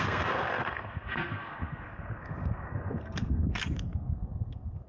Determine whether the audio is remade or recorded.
remade